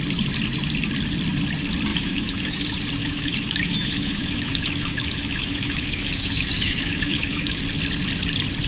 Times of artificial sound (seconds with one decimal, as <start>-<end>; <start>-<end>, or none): 1.9-2.6; 3.0-7.6

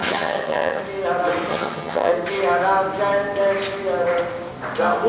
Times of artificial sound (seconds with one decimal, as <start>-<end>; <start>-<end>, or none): 0.0-0.8; 1.5-2.1